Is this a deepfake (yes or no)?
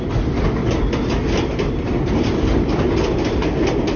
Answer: no